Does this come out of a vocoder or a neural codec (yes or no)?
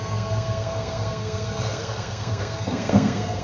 yes